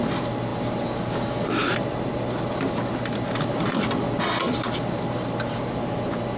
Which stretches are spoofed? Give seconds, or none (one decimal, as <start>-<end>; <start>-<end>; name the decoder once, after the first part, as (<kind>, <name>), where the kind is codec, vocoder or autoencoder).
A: none